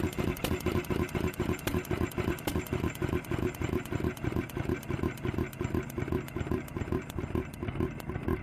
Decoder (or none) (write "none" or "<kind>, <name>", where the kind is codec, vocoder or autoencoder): vocoder, BigVGAN v2